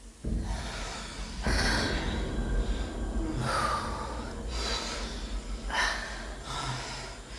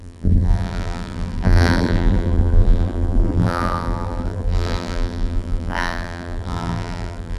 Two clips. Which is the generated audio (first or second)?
second